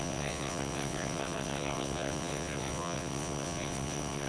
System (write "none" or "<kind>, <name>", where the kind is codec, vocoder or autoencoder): vocoder, WaveNeXt